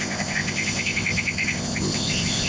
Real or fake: fake